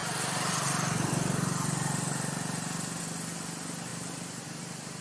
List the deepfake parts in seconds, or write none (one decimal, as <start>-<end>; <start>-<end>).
none